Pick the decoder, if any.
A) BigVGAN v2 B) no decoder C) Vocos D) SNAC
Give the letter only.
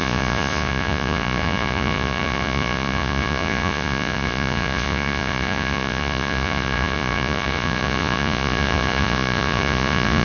C